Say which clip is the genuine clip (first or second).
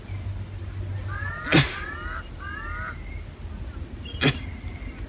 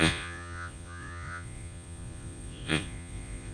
first